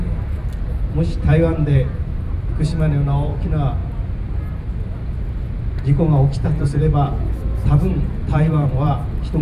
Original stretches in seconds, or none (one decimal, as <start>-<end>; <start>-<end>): 0.0-1.5; 2.5-7.9